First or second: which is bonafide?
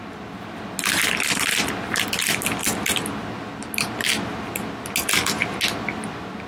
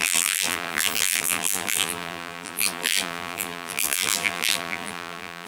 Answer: first